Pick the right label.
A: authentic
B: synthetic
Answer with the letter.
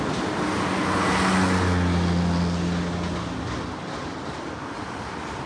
A